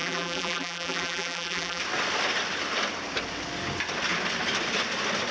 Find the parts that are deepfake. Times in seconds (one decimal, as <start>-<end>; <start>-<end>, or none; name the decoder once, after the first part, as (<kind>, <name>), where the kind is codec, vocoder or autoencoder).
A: 0.0-1.8 (vocoder, BigVGAN v2)